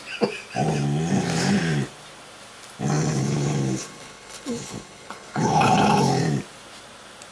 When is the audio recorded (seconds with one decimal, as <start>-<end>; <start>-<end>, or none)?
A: 0.0-3.2; 6.2-7.3